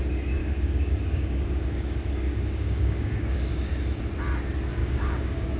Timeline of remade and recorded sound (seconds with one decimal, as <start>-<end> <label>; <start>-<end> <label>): 0.0-0.4 recorded; 0.4-3.7 remade; 3.7-4.8 recorded; 4.8-5.6 remade